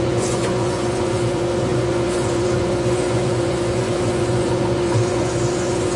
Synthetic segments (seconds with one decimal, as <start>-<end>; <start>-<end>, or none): 0.0-6.0

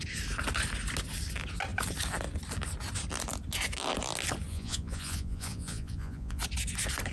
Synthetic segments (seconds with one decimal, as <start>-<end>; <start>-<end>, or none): 4.5-6.4

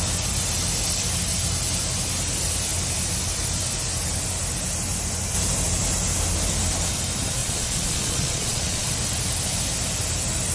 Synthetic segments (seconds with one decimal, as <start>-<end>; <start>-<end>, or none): 7.4-8.9

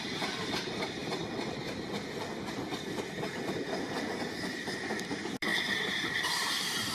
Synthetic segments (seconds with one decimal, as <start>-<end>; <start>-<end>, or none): 0.0-1.0; 5.1-6.9

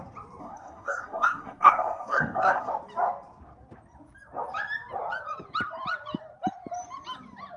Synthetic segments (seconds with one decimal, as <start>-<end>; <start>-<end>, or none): 0.4-2.7